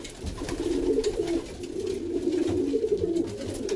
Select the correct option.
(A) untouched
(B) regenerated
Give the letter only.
A